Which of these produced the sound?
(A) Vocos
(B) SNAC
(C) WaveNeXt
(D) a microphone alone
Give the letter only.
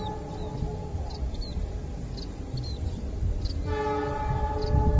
D